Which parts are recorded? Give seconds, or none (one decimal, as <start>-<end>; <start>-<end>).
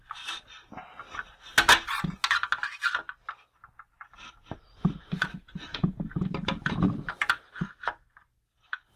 0.0-5.3; 6.3-9.0